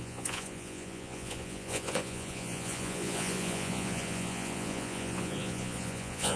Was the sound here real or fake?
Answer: fake